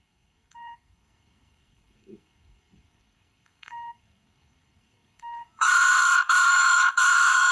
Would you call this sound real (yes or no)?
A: no